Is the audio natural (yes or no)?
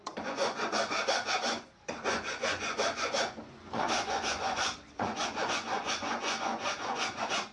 no